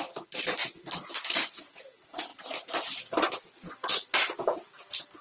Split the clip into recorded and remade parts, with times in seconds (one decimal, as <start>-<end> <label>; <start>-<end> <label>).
0.0-0.6 recorded; 0.6-1.6 remade; 1.6-2.3 recorded; 2.3-2.9 remade; 2.9-5.2 recorded